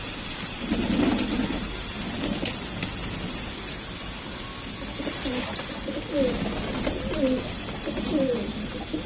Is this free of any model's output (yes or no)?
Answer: yes